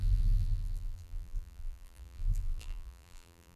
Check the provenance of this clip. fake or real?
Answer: fake